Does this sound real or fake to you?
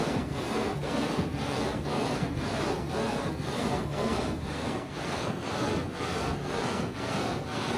fake